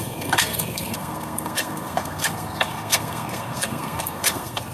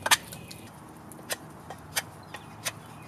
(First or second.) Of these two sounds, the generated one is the first